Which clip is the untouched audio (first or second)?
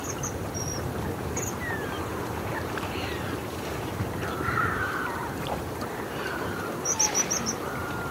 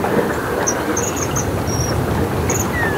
second